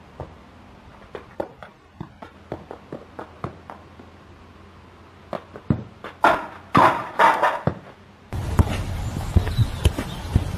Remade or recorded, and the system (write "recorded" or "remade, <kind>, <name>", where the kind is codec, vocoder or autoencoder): recorded